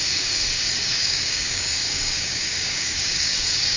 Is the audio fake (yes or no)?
yes